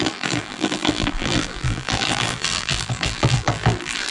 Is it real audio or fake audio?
fake